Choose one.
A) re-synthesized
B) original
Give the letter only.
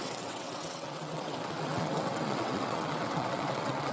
A